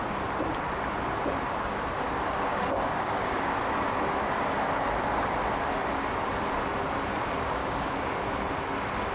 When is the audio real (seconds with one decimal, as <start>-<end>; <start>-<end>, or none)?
0.0-2.5; 3.6-7.6; 8.2-9.1